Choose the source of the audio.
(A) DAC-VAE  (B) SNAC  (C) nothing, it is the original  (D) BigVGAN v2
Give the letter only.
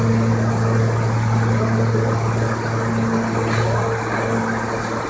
C